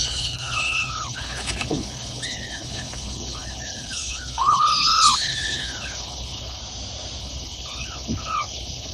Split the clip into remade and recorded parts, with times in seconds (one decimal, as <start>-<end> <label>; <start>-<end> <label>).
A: 0.0-6.6 remade; 6.6-7.2 recorded; 7.2-8.9 remade